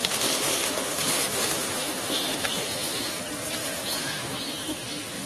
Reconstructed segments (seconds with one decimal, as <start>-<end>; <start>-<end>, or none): 0.0-3.2; 3.6-5.3